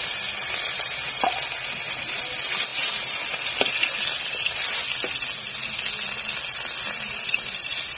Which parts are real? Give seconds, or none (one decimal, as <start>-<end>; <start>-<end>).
0.0-8.0

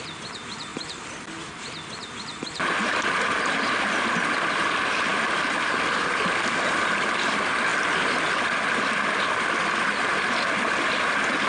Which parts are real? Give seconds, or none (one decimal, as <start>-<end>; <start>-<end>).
0.0-11.5

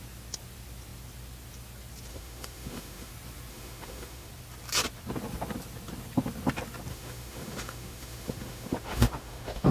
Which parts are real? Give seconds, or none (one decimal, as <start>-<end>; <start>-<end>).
0.0-2.1; 3.1-3.5; 4.3-6.9

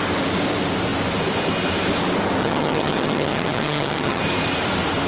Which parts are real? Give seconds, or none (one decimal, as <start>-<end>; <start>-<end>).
0.0-2.4; 4.2-5.1

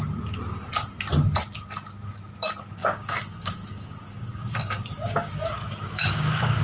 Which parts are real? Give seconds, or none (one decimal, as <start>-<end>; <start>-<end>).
0.0-2.8

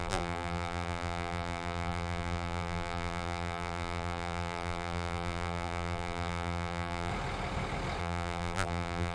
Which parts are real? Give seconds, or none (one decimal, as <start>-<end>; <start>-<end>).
7.1-8.0

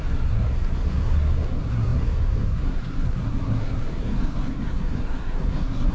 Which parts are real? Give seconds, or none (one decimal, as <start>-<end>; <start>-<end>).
none